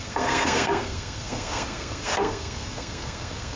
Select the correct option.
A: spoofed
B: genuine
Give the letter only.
A